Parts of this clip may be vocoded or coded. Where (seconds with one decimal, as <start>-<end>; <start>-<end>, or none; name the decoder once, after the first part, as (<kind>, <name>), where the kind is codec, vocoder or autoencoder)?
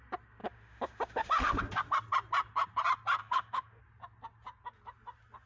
0.4-1.6 (autoencoder, DAC-VAE); 3.2-3.8